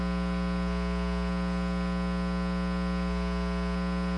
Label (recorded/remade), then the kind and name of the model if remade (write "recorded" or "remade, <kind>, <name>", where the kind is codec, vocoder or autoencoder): recorded